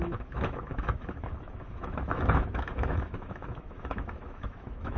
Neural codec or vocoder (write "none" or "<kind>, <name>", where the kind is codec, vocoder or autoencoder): autoencoder, DAC-VAE